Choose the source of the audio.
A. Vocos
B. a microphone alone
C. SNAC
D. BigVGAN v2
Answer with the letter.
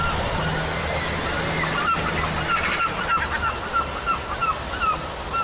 B